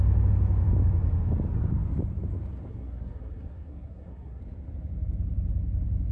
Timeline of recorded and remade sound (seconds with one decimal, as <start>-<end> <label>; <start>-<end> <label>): 0.0-2.7 recorded; 2.7-4.4 remade; 4.4-6.1 recorded